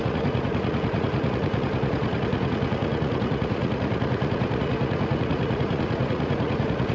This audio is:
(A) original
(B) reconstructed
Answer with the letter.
B